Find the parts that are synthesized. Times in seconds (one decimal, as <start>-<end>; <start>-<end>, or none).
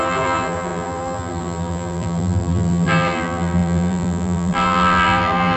0.0-5.6